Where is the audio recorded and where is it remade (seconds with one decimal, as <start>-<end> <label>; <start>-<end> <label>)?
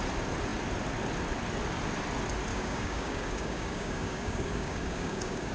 0.0-2.5 recorded; 2.5-5.5 remade